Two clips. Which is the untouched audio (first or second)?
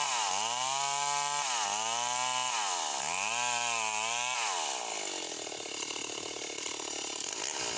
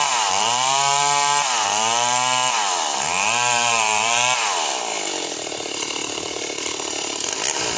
first